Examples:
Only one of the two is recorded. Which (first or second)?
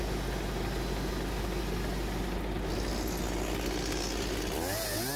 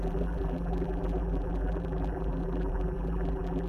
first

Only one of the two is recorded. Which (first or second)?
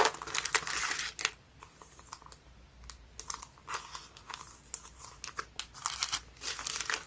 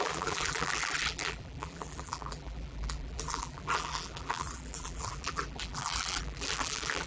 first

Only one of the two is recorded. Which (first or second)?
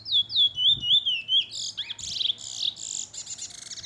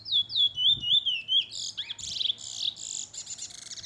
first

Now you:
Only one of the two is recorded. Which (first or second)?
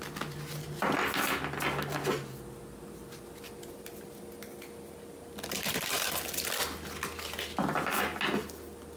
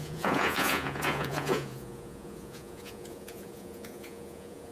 first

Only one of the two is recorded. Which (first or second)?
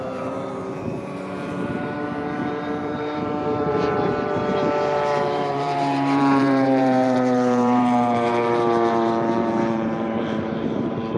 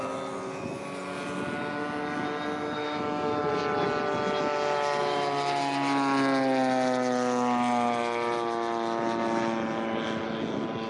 second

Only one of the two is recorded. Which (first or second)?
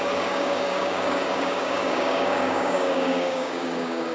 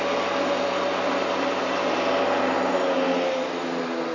second